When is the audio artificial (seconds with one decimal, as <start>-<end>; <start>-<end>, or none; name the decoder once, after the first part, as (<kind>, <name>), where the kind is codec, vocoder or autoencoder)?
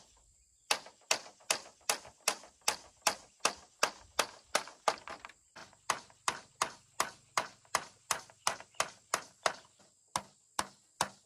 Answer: none